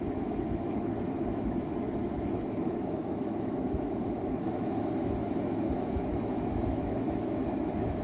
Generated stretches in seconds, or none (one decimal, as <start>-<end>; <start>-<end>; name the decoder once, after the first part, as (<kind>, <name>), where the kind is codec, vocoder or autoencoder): 0.0-8.0 (autoencoder, DAC-VAE)